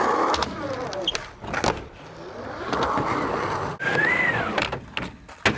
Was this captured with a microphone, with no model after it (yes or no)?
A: yes